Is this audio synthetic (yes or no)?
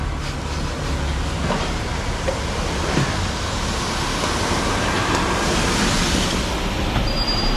no